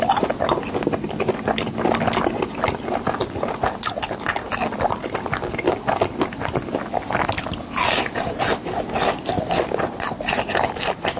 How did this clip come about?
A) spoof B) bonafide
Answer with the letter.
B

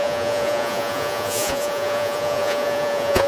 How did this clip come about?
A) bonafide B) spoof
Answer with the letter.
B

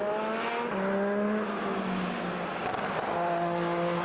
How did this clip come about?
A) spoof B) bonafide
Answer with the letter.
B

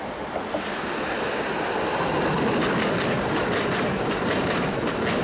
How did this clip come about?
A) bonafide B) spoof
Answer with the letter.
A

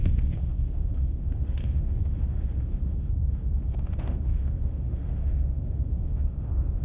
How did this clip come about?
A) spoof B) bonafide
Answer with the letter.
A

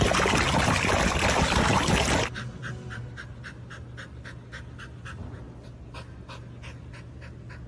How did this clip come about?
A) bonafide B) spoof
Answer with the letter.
A